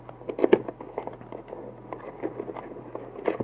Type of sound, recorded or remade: recorded